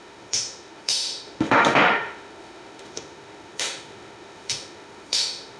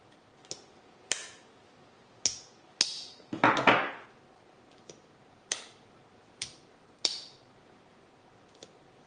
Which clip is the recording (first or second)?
second